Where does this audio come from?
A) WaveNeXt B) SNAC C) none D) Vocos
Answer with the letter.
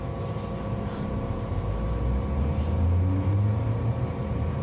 C